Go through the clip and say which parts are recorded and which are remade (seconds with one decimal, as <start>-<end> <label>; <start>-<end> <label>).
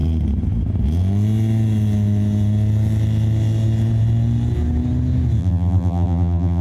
0.0-5.4 recorded; 5.4-6.6 remade